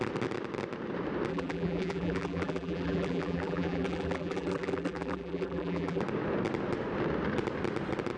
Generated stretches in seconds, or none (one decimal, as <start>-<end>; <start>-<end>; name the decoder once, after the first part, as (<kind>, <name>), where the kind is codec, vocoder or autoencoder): 1.3-6.0 (vocoder, BigVGAN v2)

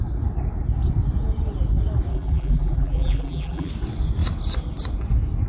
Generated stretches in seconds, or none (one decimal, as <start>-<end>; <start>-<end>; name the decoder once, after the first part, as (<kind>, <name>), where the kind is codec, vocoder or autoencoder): 2.1-3.7 (vocoder, BigVGAN v2)